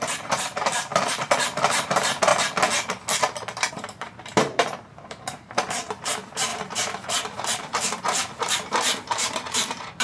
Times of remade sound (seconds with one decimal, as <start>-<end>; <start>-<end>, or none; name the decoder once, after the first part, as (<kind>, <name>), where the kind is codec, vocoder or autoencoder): 0.0-0.9 (vocoder, BigVGAN v2); 1.8-2.3; 3.7-10.0